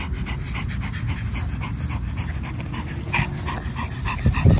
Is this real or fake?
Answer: real